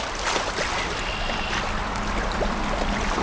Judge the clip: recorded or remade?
recorded